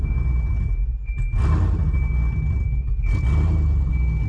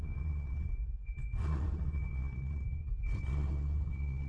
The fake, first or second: second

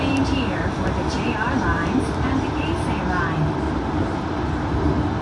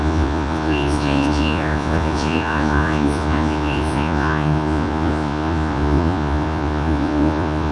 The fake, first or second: second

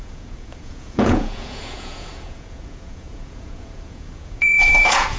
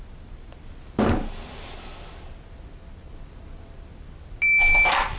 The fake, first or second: first